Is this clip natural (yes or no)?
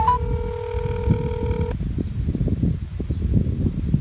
yes